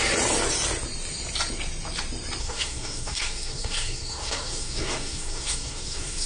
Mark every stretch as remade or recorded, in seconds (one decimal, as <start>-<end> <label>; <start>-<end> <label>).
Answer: 0.0-2.4 recorded; 2.4-6.3 remade